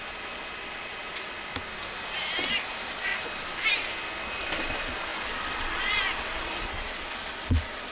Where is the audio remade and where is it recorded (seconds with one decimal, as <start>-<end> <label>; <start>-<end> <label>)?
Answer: 0.0-1.5 remade; 1.5-2.5 recorded; 2.5-3.1 remade; 3.1-4.4 recorded; 4.4-7.9 remade